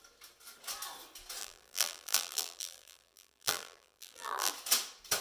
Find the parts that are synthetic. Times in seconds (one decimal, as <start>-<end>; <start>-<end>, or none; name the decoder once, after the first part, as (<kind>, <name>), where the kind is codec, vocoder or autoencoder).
1.4-4.5 (vocoder, BigVGAN v2)